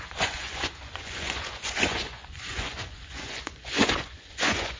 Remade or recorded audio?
remade